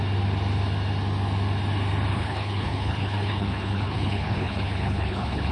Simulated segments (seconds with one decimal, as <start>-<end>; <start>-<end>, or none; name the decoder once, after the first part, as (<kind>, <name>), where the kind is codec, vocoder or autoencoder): 2.1-5.5 (codec, HILCodec)